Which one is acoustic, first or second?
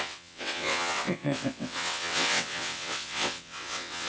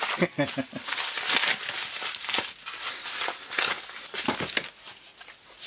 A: second